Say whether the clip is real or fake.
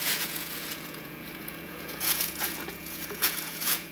fake